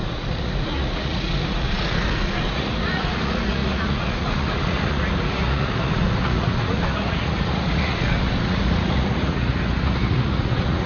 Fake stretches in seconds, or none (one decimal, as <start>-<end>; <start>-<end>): 0.0-10.9